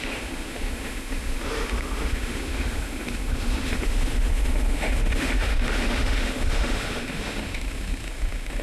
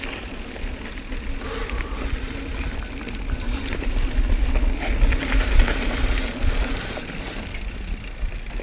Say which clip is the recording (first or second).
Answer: second